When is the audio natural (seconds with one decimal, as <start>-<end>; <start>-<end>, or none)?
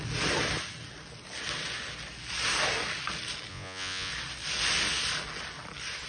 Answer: 0.0-3.5; 4.1-6.1